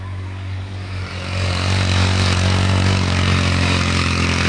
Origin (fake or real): fake